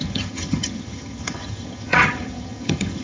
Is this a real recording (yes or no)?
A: no